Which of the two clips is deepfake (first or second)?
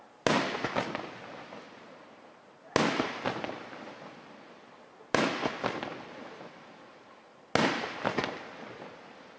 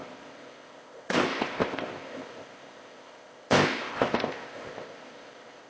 second